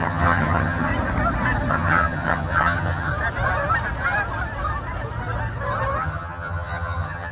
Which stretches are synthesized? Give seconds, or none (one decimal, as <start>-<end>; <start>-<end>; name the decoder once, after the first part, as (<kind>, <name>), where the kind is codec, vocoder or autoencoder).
0.0-0.9 (vocoder, HiFi-GAN); 1.7-3.1; 6.0-7.3